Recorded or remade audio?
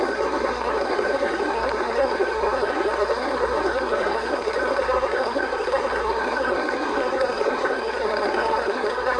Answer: remade